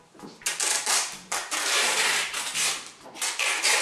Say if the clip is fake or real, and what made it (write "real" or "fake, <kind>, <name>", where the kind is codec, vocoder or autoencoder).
fake, vocoder, BigVGAN v2